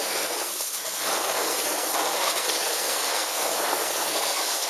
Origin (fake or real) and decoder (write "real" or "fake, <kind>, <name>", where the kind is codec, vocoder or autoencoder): fake, codec, SNAC